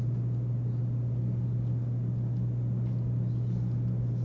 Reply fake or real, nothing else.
real